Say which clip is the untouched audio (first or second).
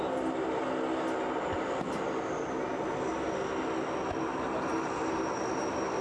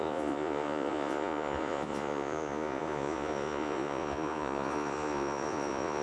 first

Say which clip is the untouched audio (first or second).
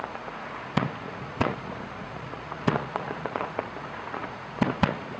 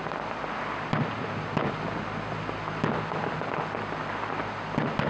second